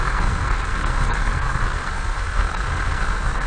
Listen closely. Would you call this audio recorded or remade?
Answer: remade